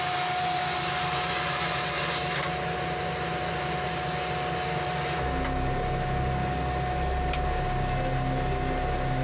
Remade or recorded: recorded